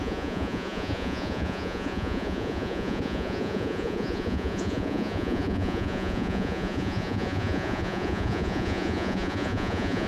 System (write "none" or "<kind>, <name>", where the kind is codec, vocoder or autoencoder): vocoder, Vocos